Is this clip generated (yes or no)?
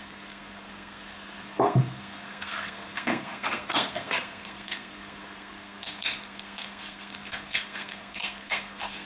yes